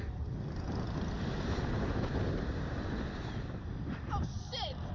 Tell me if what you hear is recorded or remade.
remade